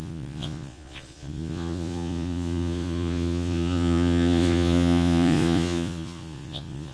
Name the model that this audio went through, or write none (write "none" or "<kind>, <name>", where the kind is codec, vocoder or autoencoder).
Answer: vocoder, Vocos